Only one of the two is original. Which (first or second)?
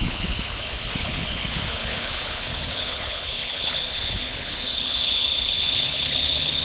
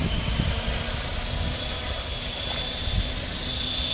second